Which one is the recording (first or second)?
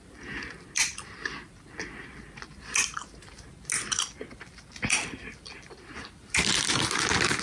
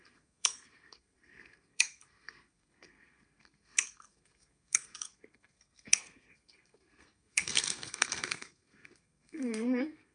first